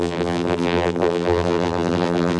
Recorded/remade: remade